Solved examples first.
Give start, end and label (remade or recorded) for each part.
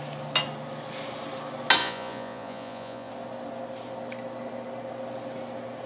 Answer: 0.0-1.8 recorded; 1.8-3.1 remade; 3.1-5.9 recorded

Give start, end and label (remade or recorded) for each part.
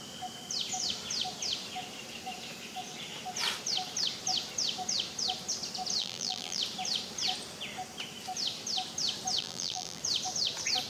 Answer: 0.0-6.0 recorded; 6.0-6.6 remade; 6.6-9.4 recorded; 9.4-10.0 remade; 10.0-10.9 recorded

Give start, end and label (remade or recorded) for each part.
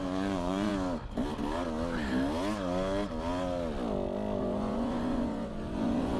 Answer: 0.0-0.7 remade; 0.7-4.4 recorded; 4.4-6.2 remade